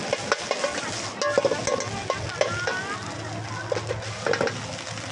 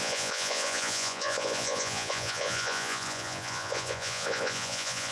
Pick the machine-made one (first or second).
second